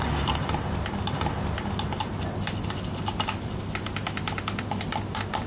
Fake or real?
real